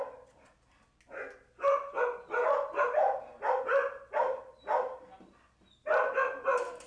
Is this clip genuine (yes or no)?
yes